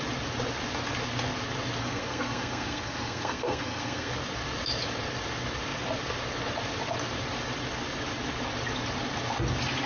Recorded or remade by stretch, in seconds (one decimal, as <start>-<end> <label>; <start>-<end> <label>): 0.0-1.8 recorded; 1.8-4.1 remade; 4.1-9.9 recorded